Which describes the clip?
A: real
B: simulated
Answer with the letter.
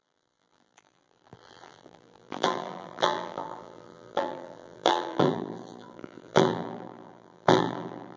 B